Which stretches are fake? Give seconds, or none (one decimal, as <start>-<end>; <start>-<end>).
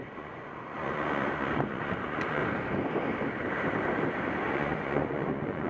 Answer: 0.0-2.4; 4.5-5.7